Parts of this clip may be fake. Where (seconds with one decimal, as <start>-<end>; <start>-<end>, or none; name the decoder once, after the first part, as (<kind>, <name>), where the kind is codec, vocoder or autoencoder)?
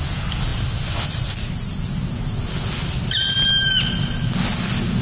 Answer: none